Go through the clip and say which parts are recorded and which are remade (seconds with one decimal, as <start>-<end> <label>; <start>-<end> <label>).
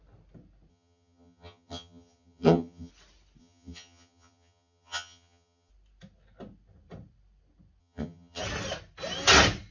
0.0-0.7 recorded; 0.7-2.9 remade; 2.9-3.4 recorded; 3.4-5.7 remade; 5.7-7.8 recorded; 7.8-8.4 remade; 8.4-9.7 recorded